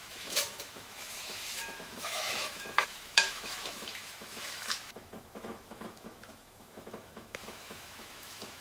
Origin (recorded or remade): remade